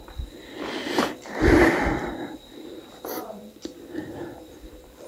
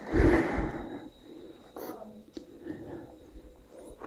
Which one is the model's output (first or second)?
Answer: first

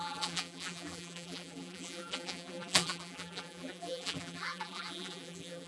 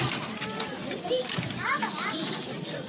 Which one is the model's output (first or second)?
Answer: first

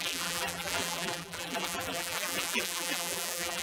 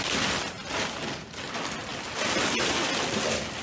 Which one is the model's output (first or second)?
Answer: first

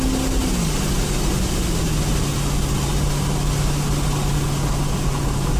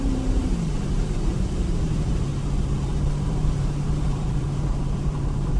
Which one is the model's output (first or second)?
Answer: second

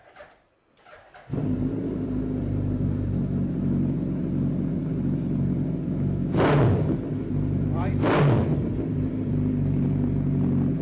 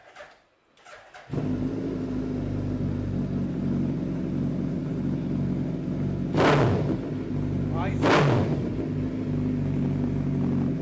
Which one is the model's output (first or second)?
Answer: first